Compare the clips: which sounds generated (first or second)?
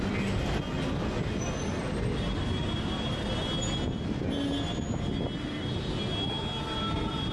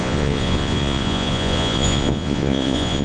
second